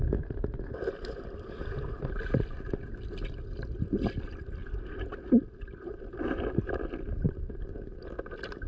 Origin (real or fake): real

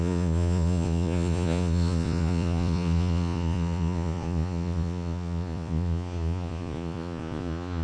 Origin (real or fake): fake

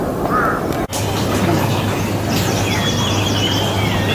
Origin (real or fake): real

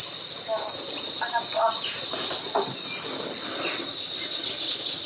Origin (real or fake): real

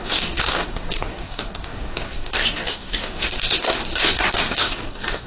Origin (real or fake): fake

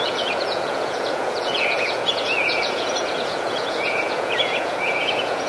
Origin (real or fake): fake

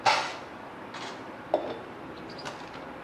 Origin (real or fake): real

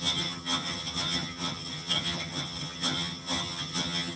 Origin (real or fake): fake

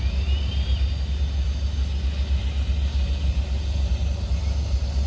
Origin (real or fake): real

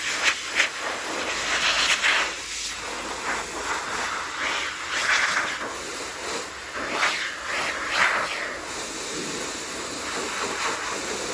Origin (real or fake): real